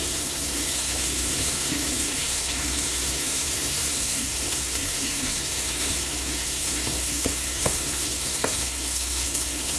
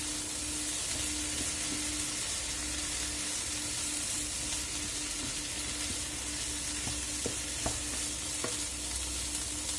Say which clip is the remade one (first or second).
first